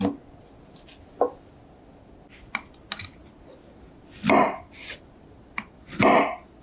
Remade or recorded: recorded